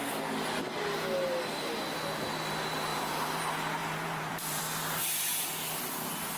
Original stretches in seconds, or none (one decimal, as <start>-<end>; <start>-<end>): 0.0-2.9; 3.4-3.8; 4.6-6.4